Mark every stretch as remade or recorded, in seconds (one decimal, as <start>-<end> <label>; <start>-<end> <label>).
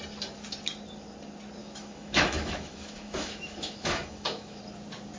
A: 0.0-1.6 recorded; 1.6-4.6 remade; 4.6-5.2 recorded